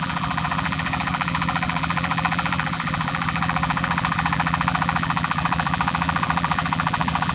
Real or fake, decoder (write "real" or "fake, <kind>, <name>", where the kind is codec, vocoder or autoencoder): fake, vocoder, BigVGAN v2